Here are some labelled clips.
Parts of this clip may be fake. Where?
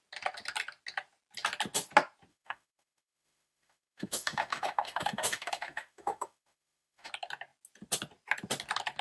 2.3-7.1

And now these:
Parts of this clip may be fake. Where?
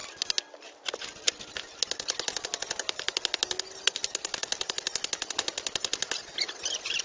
none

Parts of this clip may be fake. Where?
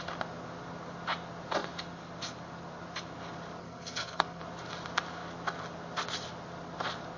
3.6-4.4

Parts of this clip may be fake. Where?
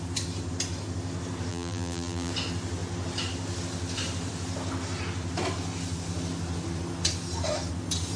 1.5-2.3